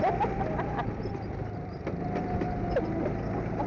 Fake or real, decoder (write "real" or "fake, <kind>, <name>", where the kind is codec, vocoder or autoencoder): real